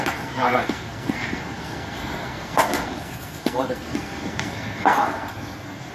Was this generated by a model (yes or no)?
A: yes